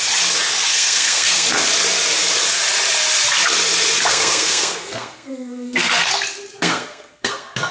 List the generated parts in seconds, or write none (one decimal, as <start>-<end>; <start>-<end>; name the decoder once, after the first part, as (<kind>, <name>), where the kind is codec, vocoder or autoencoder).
0.7-1.5 (codec, SNAC); 4.1-6.1; 6.5-7.7